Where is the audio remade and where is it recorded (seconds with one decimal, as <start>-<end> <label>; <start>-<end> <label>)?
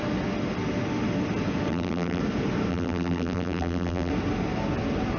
0.0-1.7 recorded; 1.7-2.2 remade; 2.2-2.7 recorded; 2.7-4.1 remade; 4.1-5.2 recorded